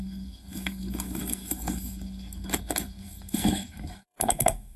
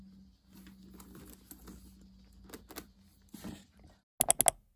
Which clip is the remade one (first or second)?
first